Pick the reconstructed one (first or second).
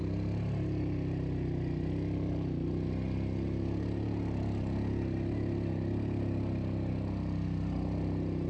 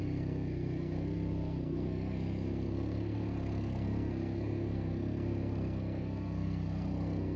second